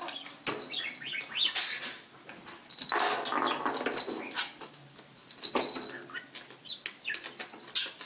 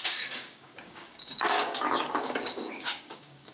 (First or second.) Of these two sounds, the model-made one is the second